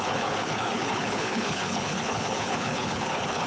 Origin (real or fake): fake